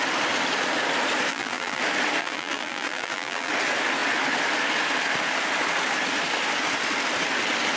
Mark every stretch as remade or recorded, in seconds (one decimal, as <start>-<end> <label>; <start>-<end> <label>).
0.0-1.3 recorded; 1.3-1.8 remade; 1.8-2.2 recorded; 2.2-3.5 remade; 3.5-7.8 recorded